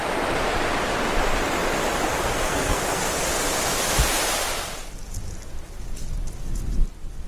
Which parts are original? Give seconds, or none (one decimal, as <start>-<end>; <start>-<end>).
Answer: 0.0-2.1; 3.1-7.3